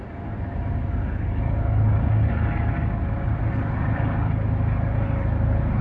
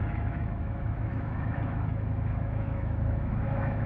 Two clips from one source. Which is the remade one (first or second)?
second